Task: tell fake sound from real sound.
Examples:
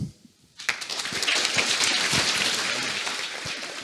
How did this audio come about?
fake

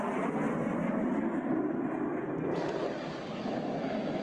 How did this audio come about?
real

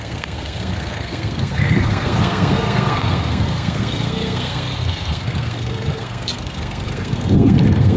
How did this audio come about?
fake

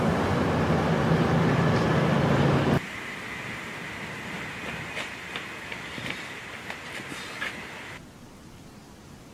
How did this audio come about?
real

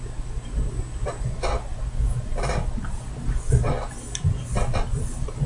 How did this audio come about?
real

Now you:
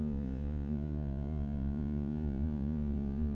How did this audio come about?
fake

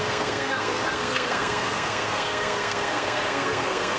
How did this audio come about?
fake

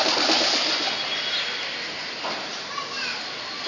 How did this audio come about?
real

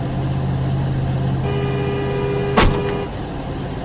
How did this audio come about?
real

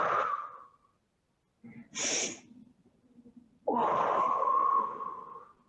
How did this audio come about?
real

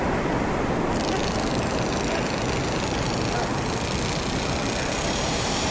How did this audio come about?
real